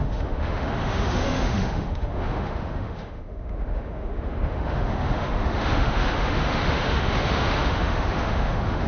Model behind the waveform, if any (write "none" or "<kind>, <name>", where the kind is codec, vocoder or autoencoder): autoencoder, DAC-VAE